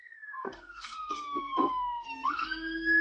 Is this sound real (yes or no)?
no